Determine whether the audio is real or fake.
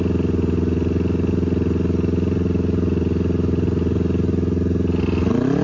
real